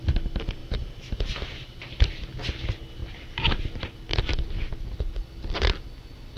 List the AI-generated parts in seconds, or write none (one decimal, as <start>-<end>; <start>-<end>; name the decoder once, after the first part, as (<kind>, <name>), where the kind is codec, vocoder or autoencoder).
0.6-1.9 (vocoder, BigVGAN v2)